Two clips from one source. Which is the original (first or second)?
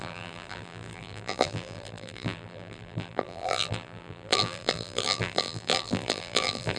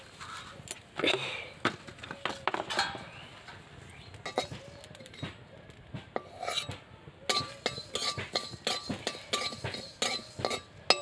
second